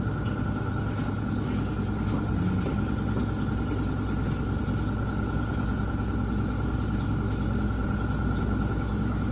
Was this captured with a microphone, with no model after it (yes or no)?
yes